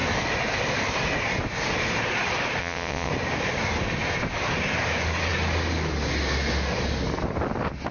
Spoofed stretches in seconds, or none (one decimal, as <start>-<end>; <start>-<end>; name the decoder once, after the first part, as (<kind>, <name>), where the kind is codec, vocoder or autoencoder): 2.6-3.1 (vocoder, WaveNeXt)